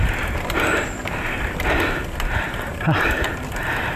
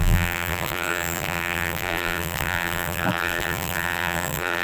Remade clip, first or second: second